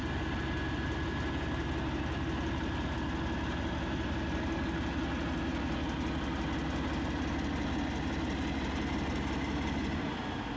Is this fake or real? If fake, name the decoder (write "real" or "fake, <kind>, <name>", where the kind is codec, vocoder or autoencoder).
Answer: real